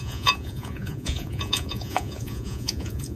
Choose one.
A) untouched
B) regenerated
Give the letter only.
B